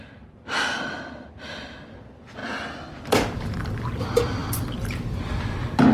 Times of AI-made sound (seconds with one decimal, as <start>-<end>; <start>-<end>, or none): none